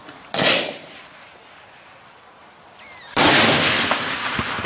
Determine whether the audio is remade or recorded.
recorded